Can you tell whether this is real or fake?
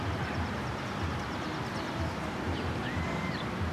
real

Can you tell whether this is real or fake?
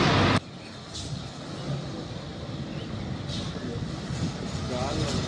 real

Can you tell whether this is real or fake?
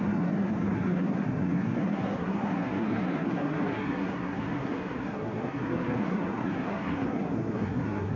fake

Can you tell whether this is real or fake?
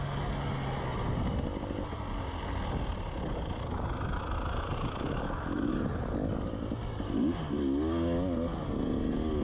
real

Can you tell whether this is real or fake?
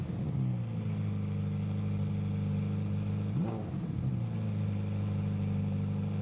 real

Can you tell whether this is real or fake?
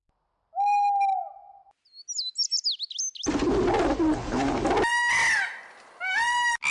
real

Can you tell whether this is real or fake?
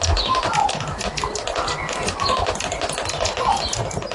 real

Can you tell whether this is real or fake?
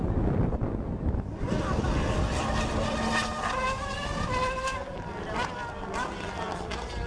real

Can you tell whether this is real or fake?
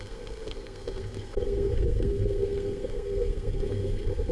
fake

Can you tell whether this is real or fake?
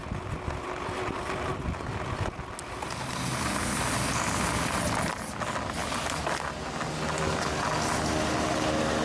real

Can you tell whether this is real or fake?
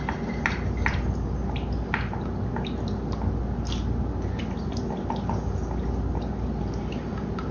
real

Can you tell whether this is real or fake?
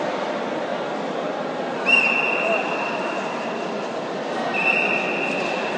real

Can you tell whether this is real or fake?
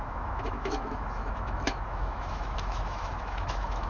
fake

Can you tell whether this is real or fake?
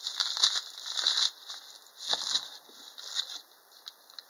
real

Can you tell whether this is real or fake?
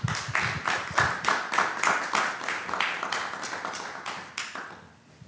real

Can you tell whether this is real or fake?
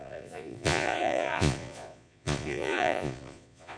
fake